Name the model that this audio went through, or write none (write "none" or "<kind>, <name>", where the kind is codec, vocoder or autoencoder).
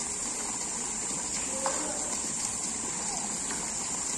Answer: none